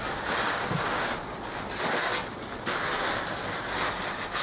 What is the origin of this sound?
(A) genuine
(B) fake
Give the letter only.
A